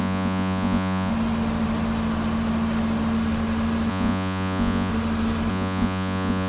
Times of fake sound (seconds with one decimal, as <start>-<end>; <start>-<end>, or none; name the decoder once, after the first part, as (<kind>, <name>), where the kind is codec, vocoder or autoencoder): 0.0-1.1 (vocoder, Vocos); 3.9-4.9; 5.5-6.5